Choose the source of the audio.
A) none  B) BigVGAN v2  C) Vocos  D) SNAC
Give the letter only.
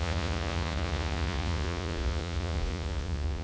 C